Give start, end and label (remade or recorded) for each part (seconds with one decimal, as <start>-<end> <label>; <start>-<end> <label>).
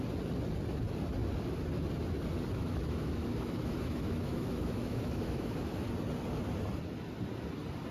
0.0-2.6 recorded; 2.6-5.9 remade; 5.9-7.9 recorded